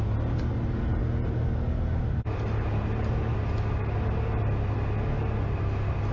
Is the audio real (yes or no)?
yes